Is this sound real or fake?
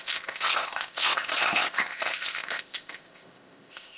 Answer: fake